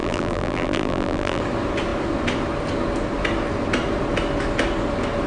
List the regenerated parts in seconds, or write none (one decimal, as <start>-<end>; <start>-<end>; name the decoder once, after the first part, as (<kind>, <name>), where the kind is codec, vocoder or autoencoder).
0.0-1.4 (vocoder, BigVGAN v2)